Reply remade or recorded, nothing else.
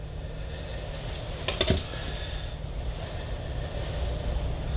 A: recorded